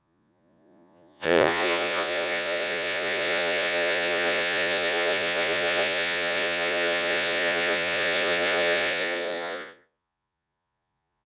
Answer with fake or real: fake